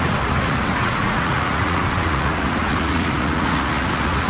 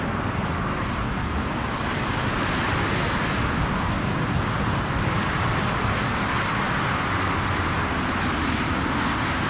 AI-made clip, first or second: first